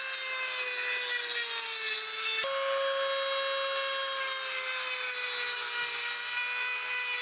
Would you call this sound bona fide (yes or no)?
yes